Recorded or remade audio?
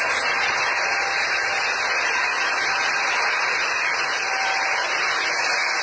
recorded